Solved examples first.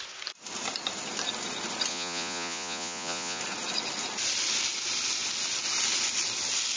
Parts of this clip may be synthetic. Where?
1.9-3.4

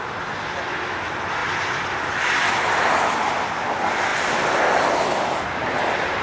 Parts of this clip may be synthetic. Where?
none

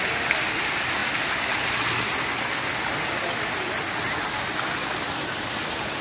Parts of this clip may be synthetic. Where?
none

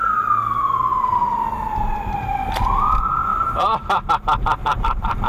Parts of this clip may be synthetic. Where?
0.9-1.4; 3.3-4.1; 4.6-5.3